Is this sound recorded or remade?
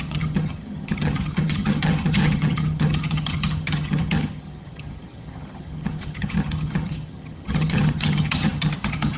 remade